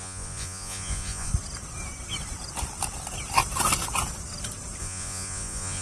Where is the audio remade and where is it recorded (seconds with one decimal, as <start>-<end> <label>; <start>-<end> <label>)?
0.0-1.3 remade; 1.3-4.8 recorded; 4.8-5.8 remade